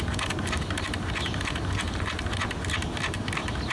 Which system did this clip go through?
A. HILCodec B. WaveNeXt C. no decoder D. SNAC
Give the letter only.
C